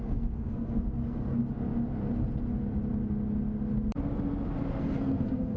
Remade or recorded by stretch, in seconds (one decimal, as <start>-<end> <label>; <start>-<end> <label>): 0.0-1.4 remade; 1.4-4.8 recorded; 4.8-5.6 remade